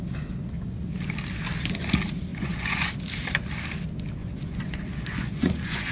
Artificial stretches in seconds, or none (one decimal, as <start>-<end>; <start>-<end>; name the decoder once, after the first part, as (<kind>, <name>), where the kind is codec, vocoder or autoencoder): 2.3-2.9 (vocoder, Vocos); 4.2-5.9